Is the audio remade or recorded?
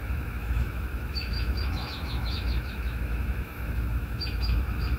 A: remade